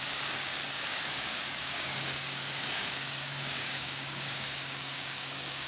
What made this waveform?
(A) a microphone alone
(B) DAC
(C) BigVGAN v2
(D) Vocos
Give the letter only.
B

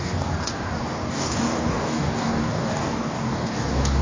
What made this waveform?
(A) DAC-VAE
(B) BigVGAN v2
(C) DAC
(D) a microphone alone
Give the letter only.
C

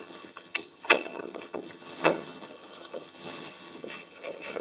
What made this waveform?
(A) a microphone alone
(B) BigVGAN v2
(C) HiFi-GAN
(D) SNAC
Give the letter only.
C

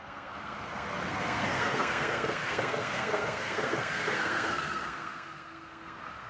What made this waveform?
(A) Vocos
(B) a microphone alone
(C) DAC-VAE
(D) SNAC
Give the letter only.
D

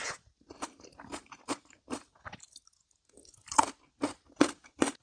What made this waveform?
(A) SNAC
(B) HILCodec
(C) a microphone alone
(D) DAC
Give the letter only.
C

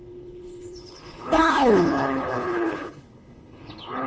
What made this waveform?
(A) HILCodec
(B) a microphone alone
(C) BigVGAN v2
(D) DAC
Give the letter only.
A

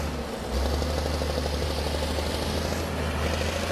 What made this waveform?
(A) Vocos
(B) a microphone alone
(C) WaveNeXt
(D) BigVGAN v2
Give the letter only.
B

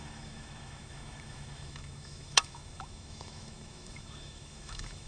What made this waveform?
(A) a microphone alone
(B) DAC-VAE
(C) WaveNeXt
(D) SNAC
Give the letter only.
B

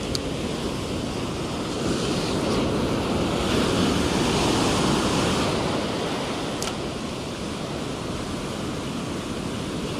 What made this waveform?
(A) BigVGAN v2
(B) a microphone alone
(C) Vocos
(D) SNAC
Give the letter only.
B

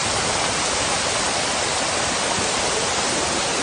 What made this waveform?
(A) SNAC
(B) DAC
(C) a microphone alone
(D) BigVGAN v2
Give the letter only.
C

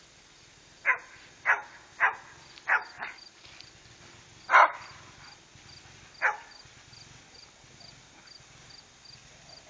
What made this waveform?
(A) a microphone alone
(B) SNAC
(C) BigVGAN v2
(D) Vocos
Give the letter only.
A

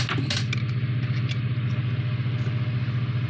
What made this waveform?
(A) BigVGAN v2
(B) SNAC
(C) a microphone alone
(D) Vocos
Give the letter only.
C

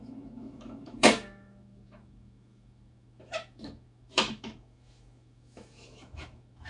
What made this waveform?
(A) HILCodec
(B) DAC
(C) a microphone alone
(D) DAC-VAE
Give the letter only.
D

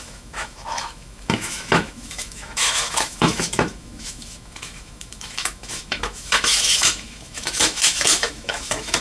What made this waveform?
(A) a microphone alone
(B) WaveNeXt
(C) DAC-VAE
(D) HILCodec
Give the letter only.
C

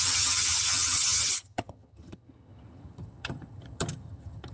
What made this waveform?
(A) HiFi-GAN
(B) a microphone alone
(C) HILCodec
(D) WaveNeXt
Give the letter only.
A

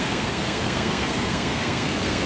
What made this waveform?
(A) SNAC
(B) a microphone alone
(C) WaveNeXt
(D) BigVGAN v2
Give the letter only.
A